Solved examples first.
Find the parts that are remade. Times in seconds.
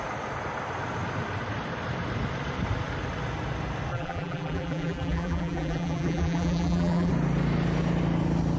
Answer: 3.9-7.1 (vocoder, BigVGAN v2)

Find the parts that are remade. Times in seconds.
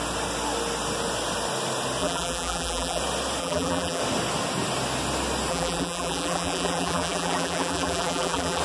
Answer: 2.0-3.0 (vocoder, BigVGAN v2); 3.4-4.0; 5.5-8.6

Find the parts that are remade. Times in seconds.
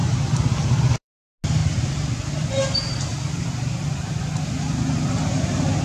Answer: 0.0-1.1 (vocoder, BigVGAN v2); 1.6-2.5; 3.1-5.3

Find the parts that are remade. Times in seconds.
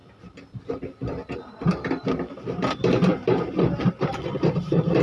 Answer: 1.6-5.0 (vocoder, BigVGAN v2)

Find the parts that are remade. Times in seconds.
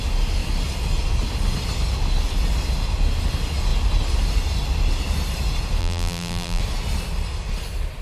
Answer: 5.8-6.6 (vocoder, BigVGAN v2)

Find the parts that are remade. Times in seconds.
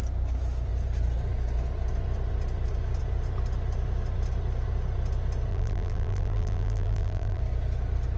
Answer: 5.5-7.4 (vocoder, BigVGAN v2)